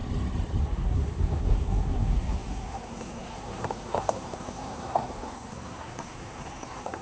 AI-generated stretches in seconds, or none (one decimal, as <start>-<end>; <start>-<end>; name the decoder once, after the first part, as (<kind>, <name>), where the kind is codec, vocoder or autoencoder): 0.6-7.0 (codec, SNAC)